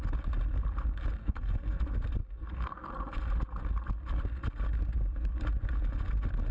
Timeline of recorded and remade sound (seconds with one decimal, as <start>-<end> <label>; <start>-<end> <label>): 0.0-1.2 recorded; 1.2-1.8 remade; 1.8-2.2 recorded; 2.2-2.9 remade; 2.9-6.5 recorded